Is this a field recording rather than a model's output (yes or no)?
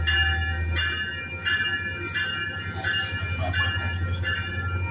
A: yes